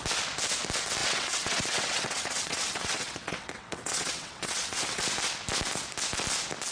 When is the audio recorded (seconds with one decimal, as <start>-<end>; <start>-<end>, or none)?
0.0-1.0; 5.0-6.7